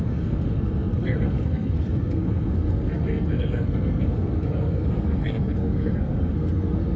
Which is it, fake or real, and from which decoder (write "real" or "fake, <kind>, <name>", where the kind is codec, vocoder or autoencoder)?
fake, codec, SNAC